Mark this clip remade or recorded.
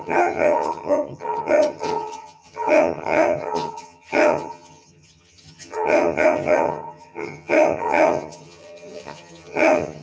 remade